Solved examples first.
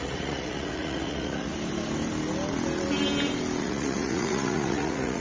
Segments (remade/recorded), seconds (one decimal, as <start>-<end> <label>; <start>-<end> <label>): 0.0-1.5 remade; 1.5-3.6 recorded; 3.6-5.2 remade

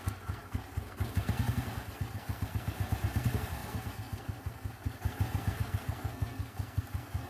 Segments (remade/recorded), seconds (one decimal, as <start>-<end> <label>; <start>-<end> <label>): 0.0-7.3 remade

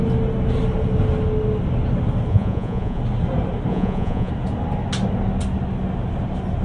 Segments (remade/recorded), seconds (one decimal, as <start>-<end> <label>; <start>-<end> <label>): 0.0-2.3 recorded; 2.3-3.0 remade; 3.0-3.7 recorded; 3.7-4.3 remade; 4.3-6.6 recorded

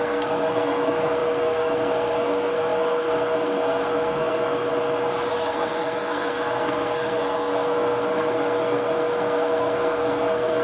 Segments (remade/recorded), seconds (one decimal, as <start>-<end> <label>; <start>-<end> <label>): 0.0-4.7 remade; 4.7-5.3 recorded; 5.3-10.6 remade